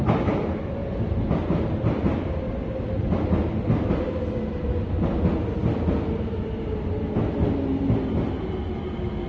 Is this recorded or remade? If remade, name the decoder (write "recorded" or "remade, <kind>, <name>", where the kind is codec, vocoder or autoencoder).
recorded